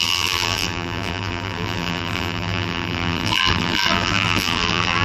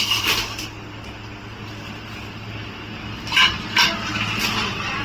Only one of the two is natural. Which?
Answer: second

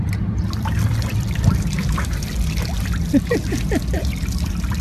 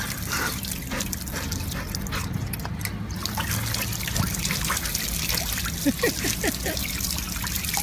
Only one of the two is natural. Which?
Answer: second